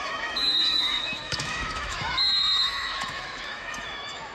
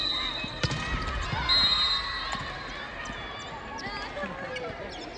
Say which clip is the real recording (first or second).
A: second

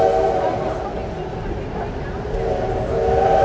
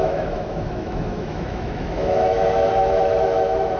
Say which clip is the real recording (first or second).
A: first